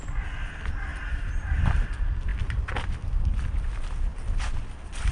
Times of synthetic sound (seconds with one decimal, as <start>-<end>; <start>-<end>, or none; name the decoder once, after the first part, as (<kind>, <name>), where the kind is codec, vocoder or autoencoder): none